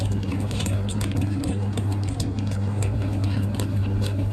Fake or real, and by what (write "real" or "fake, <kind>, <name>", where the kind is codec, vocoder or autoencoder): fake, codec, SNAC